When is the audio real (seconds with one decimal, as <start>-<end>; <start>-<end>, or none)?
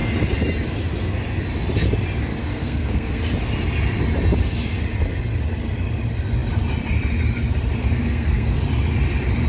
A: 0.0-2.4; 3.2-7.8; 8.6-9.5